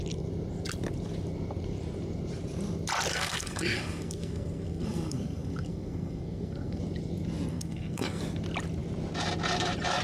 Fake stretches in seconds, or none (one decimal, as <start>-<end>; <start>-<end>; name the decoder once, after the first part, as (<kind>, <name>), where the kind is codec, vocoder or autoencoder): 3.1-6.8 (codec, SNAC); 7.5-8.2